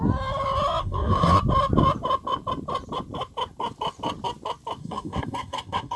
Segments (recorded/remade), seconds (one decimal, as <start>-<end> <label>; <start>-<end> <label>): 0.0-0.8 recorded; 0.8-1.4 remade; 1.4-4.8 recorded; 4.8-6.0 remade